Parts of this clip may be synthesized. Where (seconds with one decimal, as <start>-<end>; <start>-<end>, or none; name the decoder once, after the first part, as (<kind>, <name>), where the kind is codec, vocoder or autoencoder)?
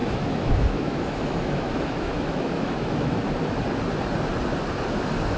0.0-3.2 (autoencoder, DAC-VAE)